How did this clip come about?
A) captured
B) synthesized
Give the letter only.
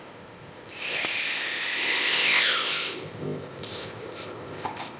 B